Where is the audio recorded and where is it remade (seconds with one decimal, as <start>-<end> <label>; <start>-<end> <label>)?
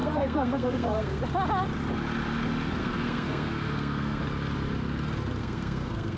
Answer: 0.0-1.2 remade; 1.2-2.8 recorded; 2.8-4.2 remade; 4.2-5.4 recorded; 5.4-6.2 remade